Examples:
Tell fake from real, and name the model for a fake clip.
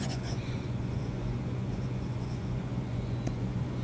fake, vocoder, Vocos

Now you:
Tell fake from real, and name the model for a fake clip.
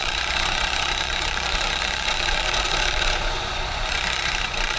fake, vocoder, Vocos